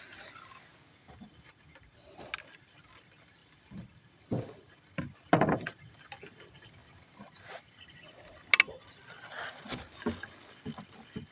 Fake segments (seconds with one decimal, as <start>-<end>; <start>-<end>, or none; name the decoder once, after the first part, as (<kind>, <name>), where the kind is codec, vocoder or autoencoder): none